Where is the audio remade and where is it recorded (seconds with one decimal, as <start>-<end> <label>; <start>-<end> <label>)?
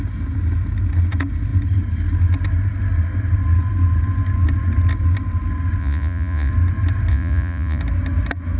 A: 0.0-5.8 recorded; 5.8-6.5 remade; 6.5-7.1 recorded; 7.1-7.8 remade; 7.8-8.6 recorded